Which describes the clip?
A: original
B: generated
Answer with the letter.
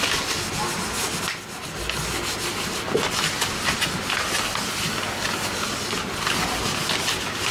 A